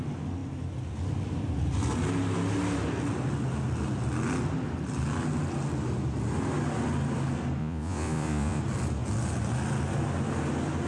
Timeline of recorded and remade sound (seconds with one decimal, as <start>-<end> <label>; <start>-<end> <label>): 0.0-7.6 recorded; 7.6-8.6 remade; 8.6-10.9 recorded